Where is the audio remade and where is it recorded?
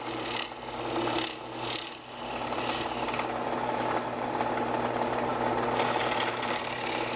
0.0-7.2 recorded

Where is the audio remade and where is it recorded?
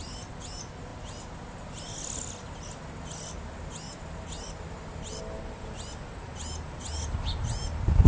0.0-8.1 recorded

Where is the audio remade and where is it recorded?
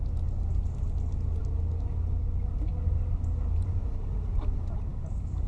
0.0-4.9 recorded; 4.9-5.5 remade